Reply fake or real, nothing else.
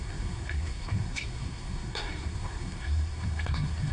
fake